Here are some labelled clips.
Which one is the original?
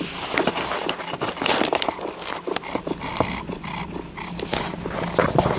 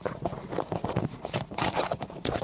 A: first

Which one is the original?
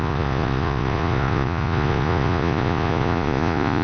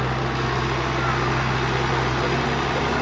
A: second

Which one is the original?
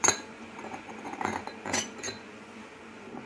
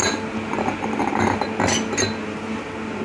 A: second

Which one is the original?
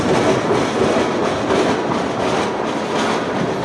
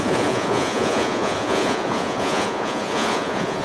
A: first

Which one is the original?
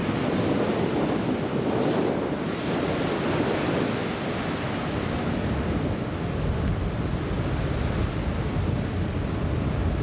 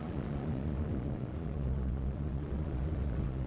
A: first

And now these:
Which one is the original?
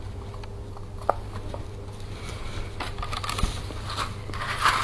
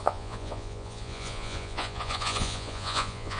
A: first